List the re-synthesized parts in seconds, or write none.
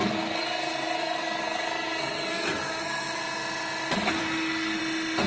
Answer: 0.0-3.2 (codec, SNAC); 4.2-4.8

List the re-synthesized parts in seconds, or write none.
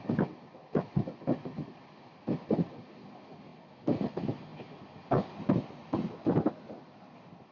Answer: none